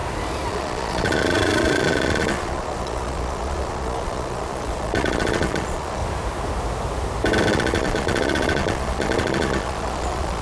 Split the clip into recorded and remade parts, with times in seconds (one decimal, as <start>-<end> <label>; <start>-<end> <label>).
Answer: 0.0-0.5 recorded; 0.5-6.0 remade; 6.0-7.5 recorded; 7.5-10.4 remade